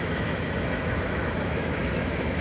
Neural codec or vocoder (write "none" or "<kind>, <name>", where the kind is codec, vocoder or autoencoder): autoencoder, DAC-VAE